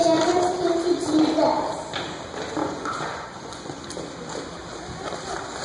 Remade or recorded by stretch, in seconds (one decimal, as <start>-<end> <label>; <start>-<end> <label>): 0.0-2.6 recorded; 2.6-3.8 remade; 3.8-5.6 recorded

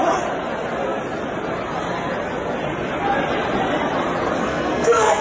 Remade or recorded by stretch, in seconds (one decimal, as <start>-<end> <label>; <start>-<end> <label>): 0.0-4.4 recorded; 4.4-5.2 remade